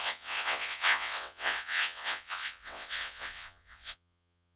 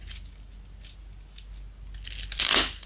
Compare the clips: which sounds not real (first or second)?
first